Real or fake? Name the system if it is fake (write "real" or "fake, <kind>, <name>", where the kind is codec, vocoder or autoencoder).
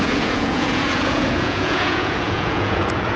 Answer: fake, vocoder, Vocos